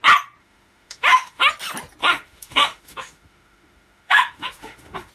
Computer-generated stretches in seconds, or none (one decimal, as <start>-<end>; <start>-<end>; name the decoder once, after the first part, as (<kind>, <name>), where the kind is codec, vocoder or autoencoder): 0.4-1.5 (autoencoder, DAC-VAE); 2.0-5.1